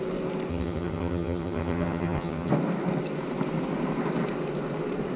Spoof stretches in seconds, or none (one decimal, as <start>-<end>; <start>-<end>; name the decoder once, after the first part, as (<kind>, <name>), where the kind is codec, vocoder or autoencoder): 0.5-2.5 (vocoder, HiFi-GAN)